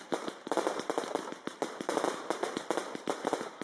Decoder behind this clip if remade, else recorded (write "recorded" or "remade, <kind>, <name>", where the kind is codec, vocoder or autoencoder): remade, vocoder, BigVGAN v2